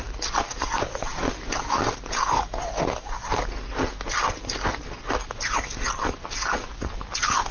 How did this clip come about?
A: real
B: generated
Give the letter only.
A